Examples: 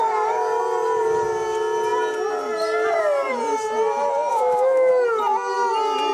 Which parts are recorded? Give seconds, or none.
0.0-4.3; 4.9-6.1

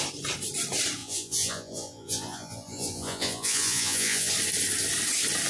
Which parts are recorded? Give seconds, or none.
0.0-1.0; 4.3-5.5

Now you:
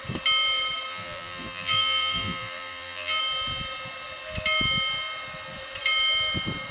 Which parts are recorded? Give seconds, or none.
0.0-0.9; 3.2-6.7